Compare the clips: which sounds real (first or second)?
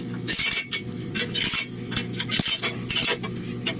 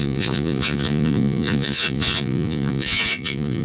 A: first